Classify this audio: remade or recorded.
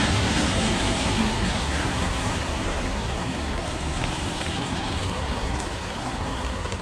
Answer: remade